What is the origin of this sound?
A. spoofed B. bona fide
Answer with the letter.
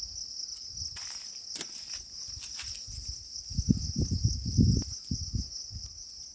B